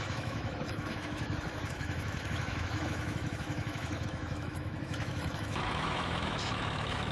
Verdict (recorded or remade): remade